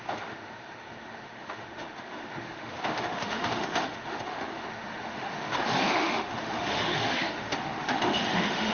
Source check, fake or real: fake